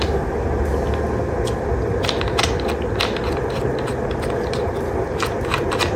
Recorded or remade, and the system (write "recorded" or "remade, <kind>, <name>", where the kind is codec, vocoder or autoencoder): recorded